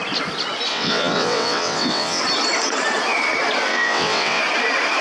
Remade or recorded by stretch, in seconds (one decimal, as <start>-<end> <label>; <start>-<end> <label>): 0.0-0.7 recorded; 0.7-2.2 remade; 2.2-3.7 recorded; 3.7-4.4 remade; 4.4-5.0 recorded